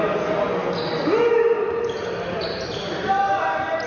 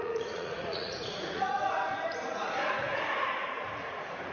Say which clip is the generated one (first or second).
second